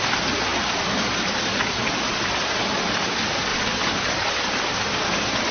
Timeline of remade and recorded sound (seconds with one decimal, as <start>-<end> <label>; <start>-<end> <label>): 0.0-5.5 recorded